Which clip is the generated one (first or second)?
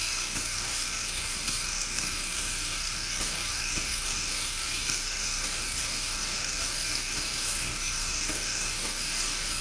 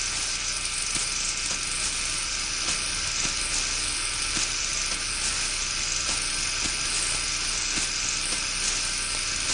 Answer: first